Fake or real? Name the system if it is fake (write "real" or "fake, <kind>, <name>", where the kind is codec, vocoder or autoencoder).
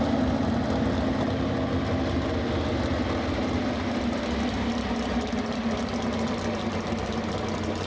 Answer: real